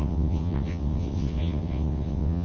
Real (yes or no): no